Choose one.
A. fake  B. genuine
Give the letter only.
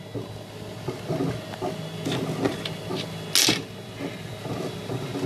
B